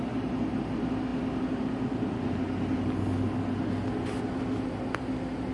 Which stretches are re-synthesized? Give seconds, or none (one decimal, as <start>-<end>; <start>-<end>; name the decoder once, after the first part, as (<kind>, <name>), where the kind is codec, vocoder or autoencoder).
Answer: none